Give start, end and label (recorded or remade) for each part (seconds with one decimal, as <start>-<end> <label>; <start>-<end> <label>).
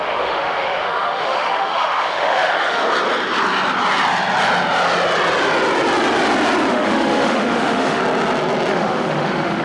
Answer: 0.0-2.8 remade; 2.8-6.7 recorded; 6.7-8.0 remade; 8.0-8.7 recorded; 8.7-9.6 remade